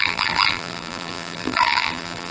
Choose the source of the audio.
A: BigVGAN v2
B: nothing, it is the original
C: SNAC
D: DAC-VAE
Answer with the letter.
A